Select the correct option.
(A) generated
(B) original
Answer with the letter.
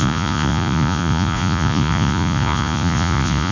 A